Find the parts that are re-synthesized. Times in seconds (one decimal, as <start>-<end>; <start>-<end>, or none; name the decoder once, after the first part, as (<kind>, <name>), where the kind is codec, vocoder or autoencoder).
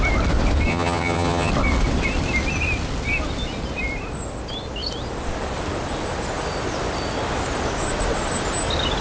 0.7-1.5 (vocoder, HiFi-GAN)